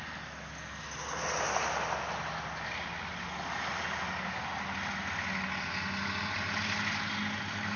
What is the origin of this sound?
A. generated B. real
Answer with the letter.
B